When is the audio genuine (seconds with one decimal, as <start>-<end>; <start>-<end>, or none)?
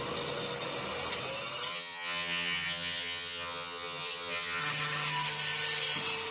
0.0-1.7; 4.6-6.3